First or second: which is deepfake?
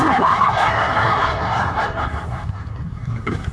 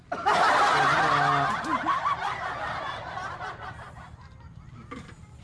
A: first